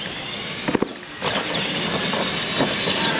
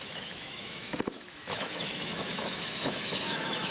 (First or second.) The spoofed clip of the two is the second